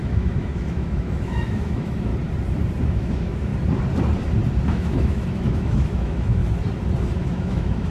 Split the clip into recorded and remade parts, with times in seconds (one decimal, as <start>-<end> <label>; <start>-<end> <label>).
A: 0.0-2.1 remade; 2.1-2.8 recorded; 2.8-3.5 remade; 3.5-4.7 recorded; 4.7-6.4 remade; 6.4-7.2 recorded; 7.2-7.9 remade